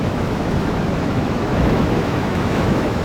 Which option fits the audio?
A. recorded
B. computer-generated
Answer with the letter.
B